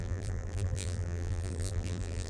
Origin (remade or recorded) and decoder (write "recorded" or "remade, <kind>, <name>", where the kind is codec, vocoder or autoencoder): remade, vocoder, BigVGAN v2